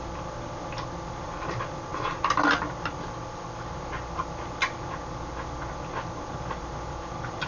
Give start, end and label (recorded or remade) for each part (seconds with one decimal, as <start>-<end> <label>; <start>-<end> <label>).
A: 0.0-7.5 recorded